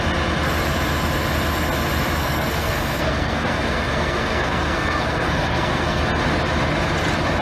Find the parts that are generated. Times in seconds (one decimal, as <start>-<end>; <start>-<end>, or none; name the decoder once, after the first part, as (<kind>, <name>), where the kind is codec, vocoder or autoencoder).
2.2-6.0 (codec, SNAC)